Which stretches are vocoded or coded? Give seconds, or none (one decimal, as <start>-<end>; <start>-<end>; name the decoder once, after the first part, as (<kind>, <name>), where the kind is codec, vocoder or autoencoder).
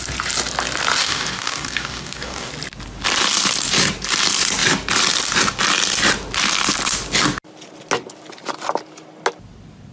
1.0-2.5 (codec, DAC)